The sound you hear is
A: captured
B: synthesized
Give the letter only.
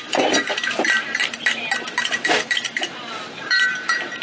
B